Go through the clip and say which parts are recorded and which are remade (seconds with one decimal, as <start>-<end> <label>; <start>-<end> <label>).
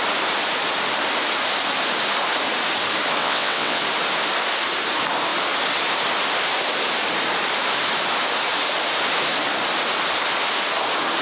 0.0-3.2 recorded; 3.2-3.8 remade; 3.8-11.2 recorded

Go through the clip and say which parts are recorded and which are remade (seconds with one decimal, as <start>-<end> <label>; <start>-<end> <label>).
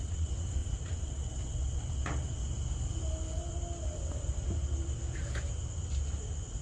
0.0-2.4 remade; 2.4-6.6 recorded